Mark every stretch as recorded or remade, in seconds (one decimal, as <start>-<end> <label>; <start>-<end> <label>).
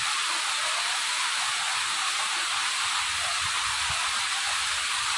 0.0-5.2 recorded